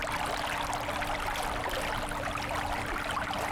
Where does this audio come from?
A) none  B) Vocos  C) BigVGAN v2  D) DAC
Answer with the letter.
A